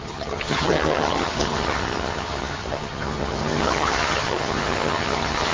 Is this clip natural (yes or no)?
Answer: no